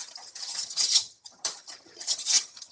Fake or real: fake